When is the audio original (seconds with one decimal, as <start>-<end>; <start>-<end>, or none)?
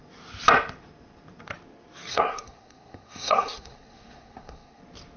0.0-2.1; 4.8-5.2